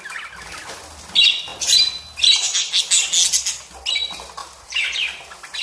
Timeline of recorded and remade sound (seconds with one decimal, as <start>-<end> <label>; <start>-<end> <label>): 0.0-4.4 recorded; 4.4-5.6 remade